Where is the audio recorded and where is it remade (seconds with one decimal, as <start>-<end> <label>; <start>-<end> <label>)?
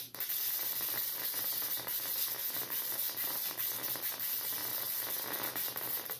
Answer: 0.0-6.2 recorded